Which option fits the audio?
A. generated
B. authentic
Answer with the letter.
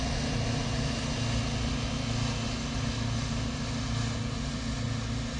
B